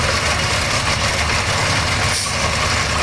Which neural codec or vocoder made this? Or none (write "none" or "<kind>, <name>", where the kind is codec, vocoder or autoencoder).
none